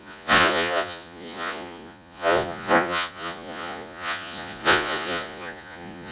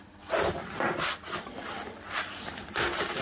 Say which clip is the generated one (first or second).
first